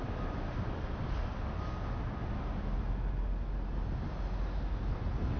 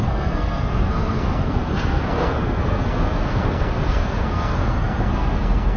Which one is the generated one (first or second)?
second